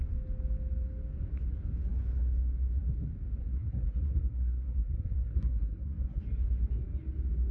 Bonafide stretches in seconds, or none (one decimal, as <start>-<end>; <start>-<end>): 0.0-3.4; 6.2-7.5